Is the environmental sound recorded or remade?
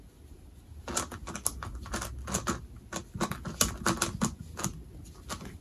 recorded